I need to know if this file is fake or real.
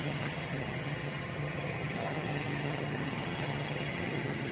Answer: fake